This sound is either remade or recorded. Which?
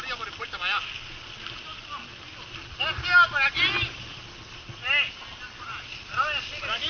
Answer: recorded